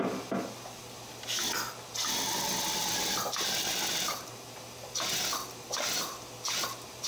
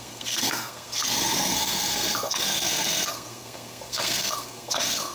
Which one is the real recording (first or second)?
first